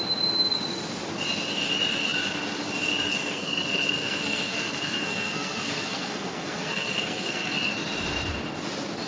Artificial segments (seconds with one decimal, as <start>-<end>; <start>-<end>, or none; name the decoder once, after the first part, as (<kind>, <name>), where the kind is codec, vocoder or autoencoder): 3.1-7.7 (codec, SNAC)